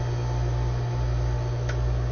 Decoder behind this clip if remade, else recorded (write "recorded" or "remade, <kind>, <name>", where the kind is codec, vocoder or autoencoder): recorded